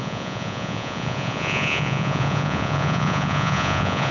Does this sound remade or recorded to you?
remade